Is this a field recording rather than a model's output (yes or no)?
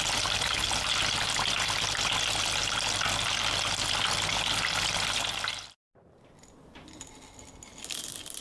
yes